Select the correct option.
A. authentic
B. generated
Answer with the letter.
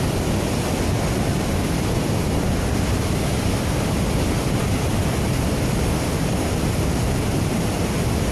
A